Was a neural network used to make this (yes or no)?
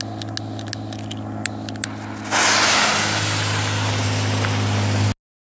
no